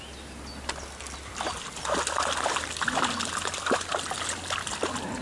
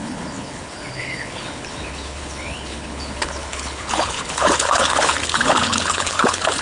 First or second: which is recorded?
first